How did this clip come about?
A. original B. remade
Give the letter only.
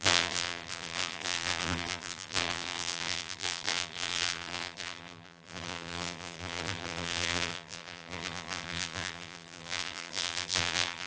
B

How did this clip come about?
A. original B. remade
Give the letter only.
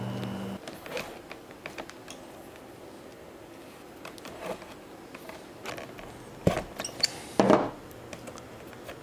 A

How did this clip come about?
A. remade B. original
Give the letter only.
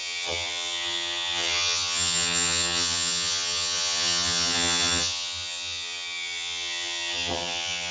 A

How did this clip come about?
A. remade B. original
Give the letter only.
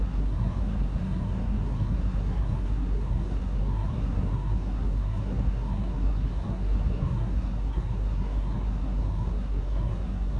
A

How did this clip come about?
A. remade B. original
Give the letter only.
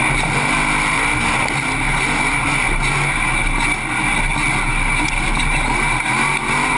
B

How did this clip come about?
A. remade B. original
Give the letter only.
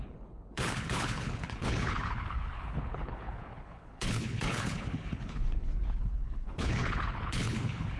A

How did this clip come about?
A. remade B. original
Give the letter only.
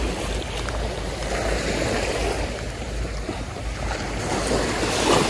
B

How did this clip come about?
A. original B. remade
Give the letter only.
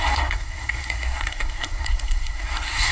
B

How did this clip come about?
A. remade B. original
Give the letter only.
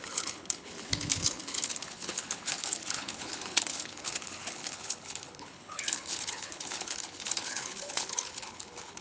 A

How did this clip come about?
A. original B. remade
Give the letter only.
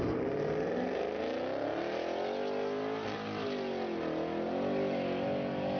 A